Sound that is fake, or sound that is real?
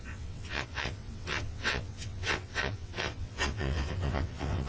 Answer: fake